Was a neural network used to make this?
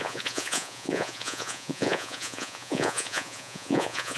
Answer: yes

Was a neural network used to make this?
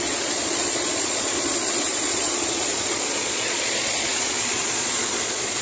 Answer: yes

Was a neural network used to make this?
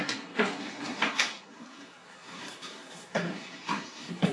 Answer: yes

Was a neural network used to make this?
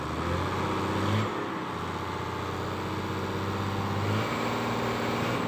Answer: no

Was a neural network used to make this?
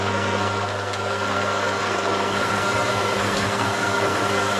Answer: yes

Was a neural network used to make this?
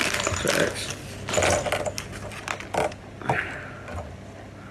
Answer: no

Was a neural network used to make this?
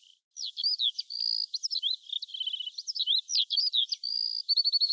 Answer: no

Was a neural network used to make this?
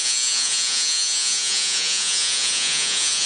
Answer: yes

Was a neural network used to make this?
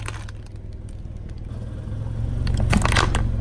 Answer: no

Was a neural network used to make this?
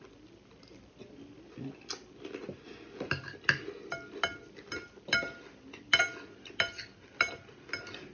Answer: no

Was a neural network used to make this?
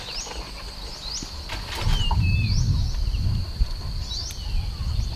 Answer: no